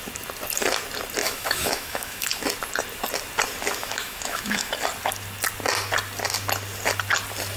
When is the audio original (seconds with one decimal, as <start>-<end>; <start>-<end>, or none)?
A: 0.0-1.2; 2.4-3.8; 4.7-7.6